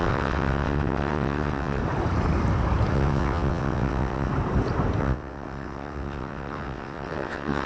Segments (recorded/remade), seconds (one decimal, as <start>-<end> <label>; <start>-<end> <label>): 0.0-1.8 remade; 1.8-2.9 recorded; 2.9-4.3 remade; 4.3-5.0 recorded; 5.0-7.7 remade